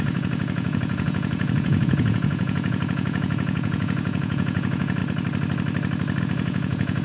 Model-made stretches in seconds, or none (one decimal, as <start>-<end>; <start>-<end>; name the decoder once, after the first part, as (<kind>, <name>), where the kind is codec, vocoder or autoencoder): 0.0-5.0 (vocoder, Vocos); 6.2-7.0